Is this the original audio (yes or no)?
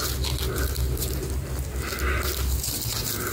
yes